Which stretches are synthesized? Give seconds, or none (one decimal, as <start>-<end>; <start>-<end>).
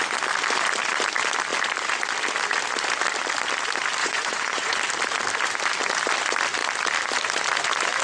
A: 4.0-4.8